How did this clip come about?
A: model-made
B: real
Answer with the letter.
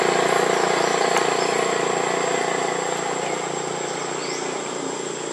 B